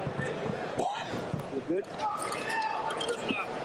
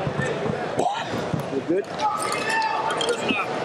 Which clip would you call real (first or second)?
second